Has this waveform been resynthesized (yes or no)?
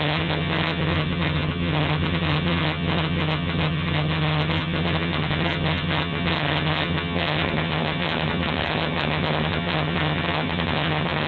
yes